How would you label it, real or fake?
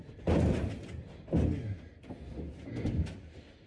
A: real